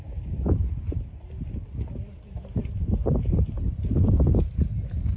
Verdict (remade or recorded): recorded